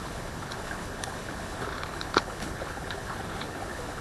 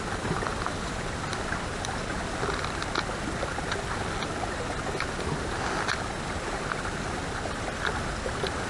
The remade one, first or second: first